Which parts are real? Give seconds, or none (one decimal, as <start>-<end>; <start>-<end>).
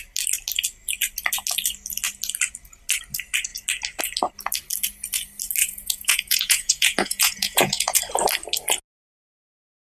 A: 0.0-5.6; 8.0-10.0